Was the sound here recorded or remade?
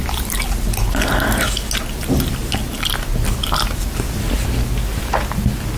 recorded